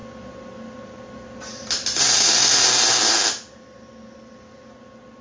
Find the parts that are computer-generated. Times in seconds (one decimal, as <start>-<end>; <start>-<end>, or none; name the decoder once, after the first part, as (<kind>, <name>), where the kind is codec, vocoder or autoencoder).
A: none